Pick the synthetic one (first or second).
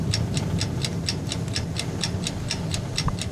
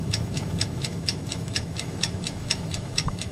second